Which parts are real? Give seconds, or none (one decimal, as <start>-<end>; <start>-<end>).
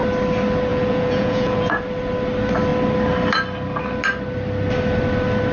0.0-0.7; 1.8-5.5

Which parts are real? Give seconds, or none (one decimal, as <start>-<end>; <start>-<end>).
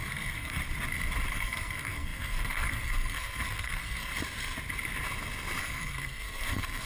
0.6-1.3; 4.1-5.6